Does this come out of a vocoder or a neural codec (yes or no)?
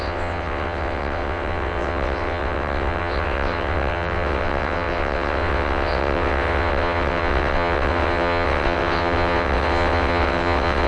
yes